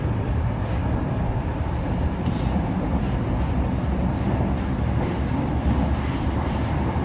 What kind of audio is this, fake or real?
real